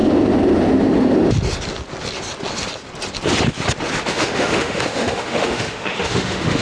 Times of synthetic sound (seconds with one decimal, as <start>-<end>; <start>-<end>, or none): 4.0-6.6